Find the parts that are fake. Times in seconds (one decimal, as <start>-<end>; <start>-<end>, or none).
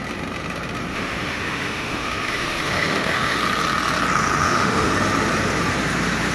0.9-3.4; 4.4-4.9